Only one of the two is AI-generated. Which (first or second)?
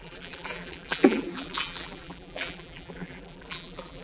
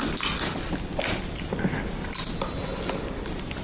first